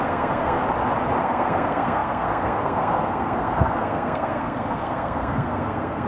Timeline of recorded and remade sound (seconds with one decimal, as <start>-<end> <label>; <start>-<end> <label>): 0.0-0.6 remade; 0.6-1.2 recorded; 1.2-6.1 remade